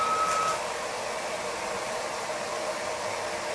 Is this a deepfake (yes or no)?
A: no